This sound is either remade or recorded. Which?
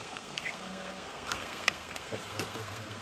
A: remade